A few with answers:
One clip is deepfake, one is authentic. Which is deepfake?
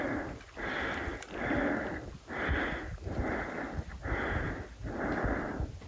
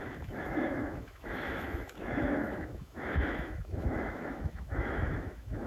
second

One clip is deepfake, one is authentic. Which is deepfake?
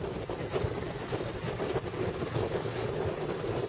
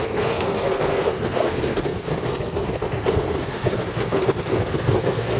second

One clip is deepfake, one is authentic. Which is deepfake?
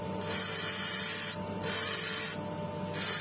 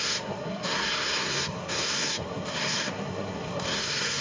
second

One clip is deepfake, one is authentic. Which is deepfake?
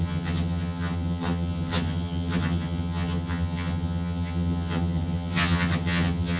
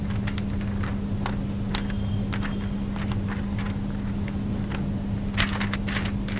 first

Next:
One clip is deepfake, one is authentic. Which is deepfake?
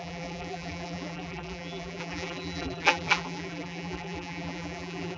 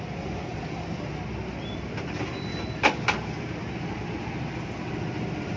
first